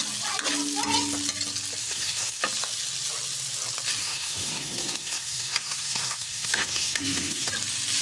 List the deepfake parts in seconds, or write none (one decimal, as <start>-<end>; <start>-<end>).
1.8-2.4; 4.0-7.5